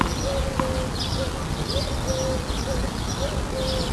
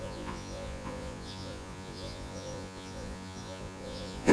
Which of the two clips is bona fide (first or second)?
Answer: first